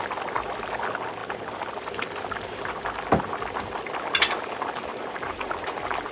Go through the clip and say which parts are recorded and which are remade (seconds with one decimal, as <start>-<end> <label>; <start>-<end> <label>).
0.0-6.1 recorded